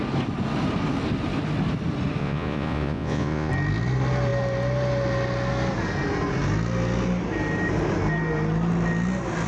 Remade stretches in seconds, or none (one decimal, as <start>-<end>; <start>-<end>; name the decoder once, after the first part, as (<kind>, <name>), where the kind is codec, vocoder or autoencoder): 2.2-3.5 (vocoder, Vocos)